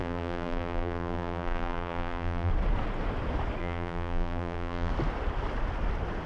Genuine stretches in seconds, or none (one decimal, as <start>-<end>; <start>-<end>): 2.5-3.6; 4.9-6.3